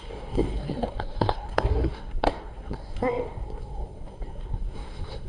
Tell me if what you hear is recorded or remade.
remade